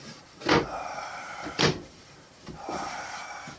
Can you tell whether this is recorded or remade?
remade